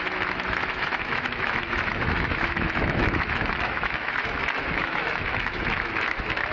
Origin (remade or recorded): remade